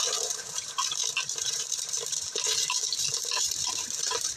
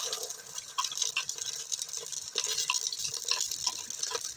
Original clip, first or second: second